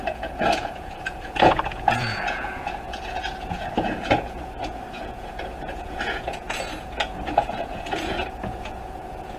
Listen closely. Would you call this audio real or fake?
fake